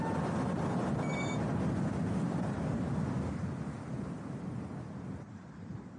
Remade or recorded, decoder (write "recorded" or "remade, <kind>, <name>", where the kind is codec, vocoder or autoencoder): recorded